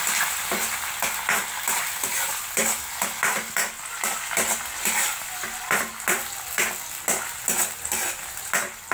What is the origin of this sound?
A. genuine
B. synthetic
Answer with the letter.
A